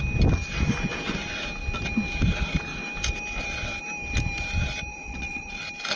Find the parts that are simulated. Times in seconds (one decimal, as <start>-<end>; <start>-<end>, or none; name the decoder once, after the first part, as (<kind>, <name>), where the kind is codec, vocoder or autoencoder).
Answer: 4.9-5.6 (vocoder, Vocos)